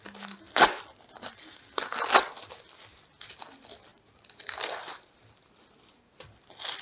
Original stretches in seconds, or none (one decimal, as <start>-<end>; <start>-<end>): 0.0-3.9; 5.9-6.8

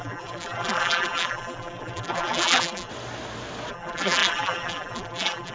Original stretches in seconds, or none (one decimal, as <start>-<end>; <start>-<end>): 2.9-3.7

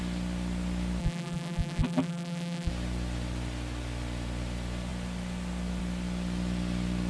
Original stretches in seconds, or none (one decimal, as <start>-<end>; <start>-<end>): 0.0-1.0; 2.7-7.1

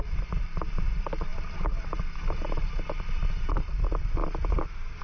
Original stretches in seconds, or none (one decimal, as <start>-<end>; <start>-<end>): 1.3-2.3; 4.2-5.0

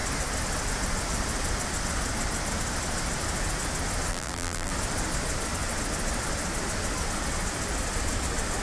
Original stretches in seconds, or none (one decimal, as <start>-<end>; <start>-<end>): 0.0-4.1; 4.7-8.6

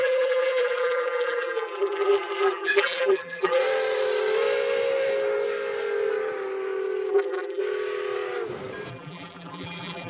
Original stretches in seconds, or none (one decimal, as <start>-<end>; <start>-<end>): 3.6-7.1; 7.6-8.9

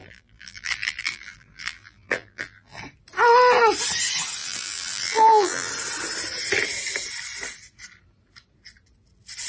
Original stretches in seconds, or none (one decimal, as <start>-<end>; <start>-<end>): 2.8-4.4; 5.7-9.5